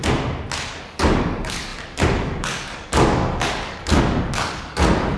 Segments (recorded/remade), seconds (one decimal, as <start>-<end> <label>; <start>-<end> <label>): 0.0-0.7 recorded; 0.7-5.2 remade